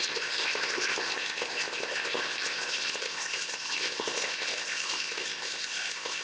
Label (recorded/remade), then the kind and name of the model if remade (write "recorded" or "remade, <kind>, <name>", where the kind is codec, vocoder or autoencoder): remade, codec, ZipCodec